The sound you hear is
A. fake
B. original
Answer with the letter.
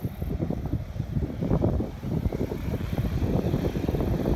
A